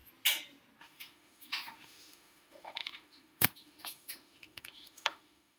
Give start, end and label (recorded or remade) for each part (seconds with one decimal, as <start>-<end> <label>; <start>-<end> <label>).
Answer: 0.0-0.8 recorded; 0.8-5.6 remade